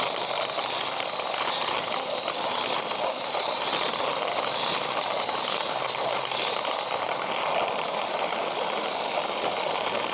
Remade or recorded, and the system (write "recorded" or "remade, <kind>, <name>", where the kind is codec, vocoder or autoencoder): recorded